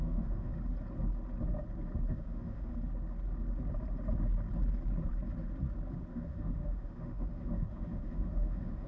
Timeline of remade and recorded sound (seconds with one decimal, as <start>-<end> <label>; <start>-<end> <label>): 0.0-0.5 remade; 0.5-2.1 recorded; 2.1-2.7 remade; 2.7-6.1 recorded; 6.1-8.9 remade

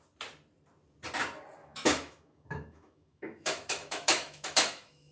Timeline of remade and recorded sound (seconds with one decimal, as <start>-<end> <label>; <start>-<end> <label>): 0.0-1.6 recorded; 1.6-5.1 remade

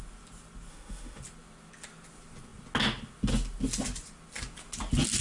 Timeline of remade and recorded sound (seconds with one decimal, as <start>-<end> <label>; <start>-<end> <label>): 0.0-0.7 recorded; 0.7-1.2 remade; 1.2-5.2 recorded